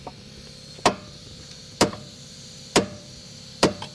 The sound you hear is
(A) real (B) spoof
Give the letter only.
B